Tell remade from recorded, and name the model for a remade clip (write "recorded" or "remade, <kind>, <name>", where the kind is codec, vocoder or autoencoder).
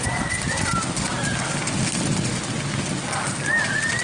recorded